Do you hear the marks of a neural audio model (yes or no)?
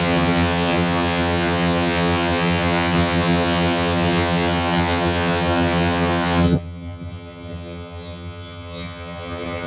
yes